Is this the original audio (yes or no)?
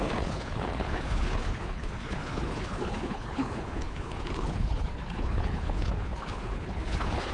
no